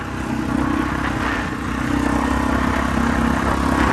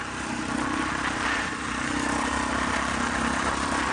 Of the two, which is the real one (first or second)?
first